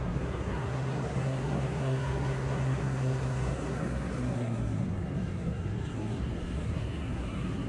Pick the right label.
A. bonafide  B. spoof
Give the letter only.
B